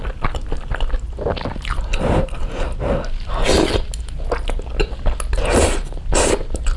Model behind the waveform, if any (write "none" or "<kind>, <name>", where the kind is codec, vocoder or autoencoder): none